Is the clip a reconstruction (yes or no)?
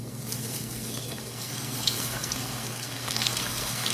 yes